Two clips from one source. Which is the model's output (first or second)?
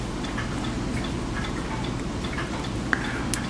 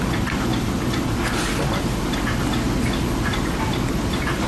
second